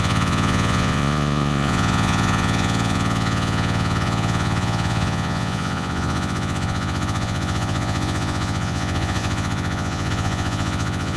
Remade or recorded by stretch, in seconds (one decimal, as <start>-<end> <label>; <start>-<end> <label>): 0.0-11.2 remade